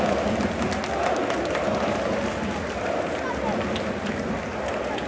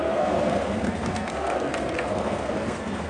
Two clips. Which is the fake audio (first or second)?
second